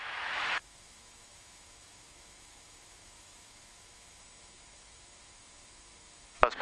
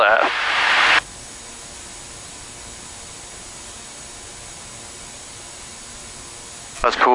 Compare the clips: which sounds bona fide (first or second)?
second